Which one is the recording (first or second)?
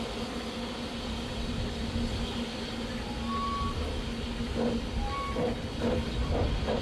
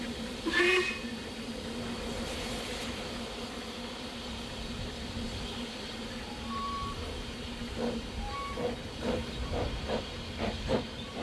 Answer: first